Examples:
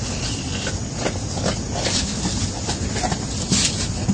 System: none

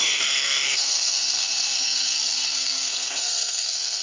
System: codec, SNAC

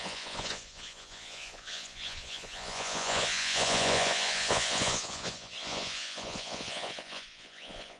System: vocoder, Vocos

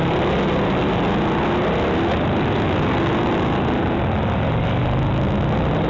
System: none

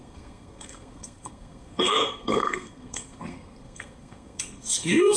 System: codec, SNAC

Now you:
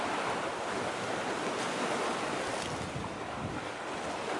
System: none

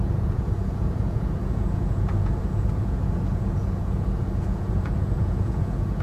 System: vocoder, Vocos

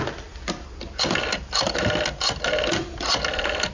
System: none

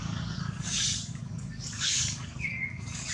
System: codec, DAC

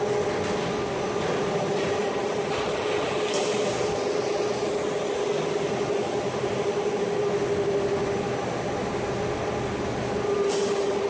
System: none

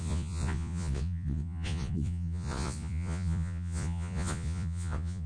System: vocoder, Vocos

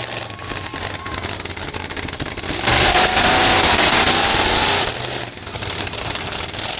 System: none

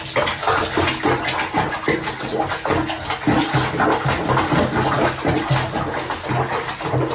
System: none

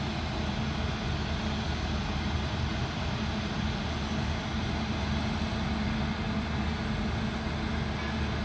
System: none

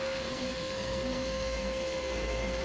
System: codec, SNAC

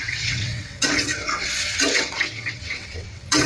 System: vocoder, WaveNeXt